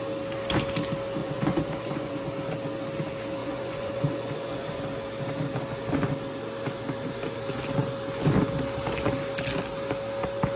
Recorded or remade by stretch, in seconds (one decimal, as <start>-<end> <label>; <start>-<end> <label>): 0.0-1.2 recorded; 1.2-2.1 remade; 2.1-3.4 recorded; 3.4-4.8 remade; 4.8-10.6 recorded